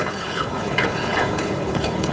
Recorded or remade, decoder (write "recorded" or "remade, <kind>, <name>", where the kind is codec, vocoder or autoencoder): remade, codec, HILCodec